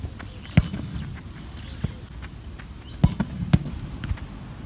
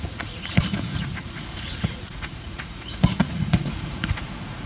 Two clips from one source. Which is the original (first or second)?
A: first